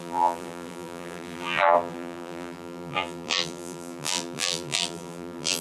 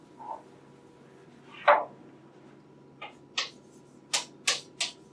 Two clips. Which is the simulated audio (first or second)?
first